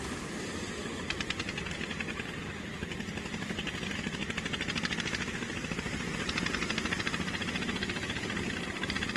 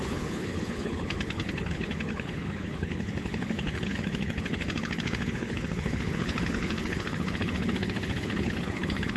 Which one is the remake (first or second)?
second